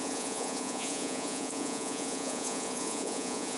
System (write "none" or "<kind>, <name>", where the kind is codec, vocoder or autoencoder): vocoder, Vocos